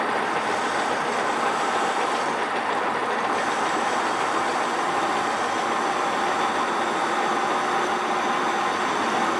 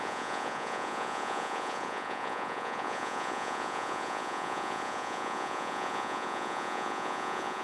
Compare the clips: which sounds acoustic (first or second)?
first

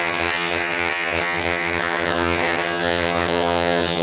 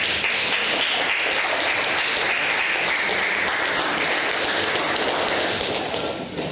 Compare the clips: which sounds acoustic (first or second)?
second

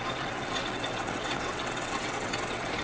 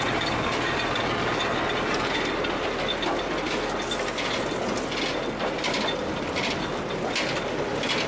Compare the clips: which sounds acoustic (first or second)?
second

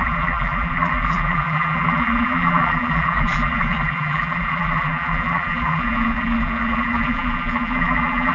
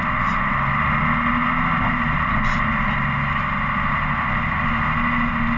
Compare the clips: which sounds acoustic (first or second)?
second